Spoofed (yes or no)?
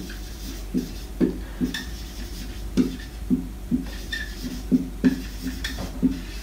yes